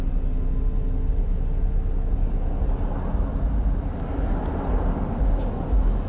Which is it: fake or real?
real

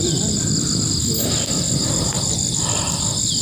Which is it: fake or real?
real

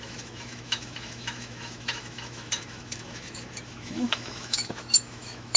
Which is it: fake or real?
fake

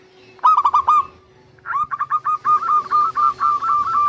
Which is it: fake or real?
real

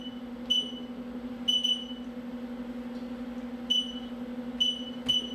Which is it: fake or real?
real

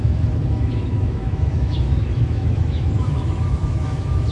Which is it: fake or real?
fake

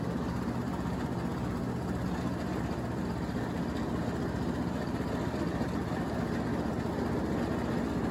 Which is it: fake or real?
real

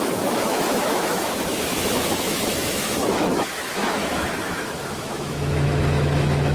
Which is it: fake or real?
fake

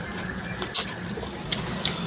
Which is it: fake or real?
real